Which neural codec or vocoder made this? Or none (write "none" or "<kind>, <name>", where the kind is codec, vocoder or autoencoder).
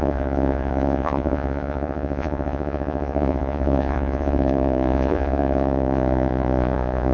vocoder, Vocos